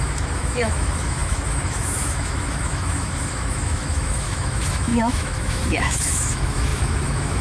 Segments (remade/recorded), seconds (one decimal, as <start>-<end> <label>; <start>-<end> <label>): 0.0-7.4 remade